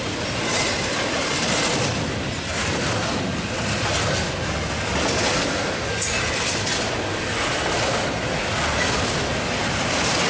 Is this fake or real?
real